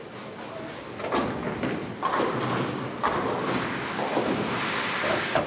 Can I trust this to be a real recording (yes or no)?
yes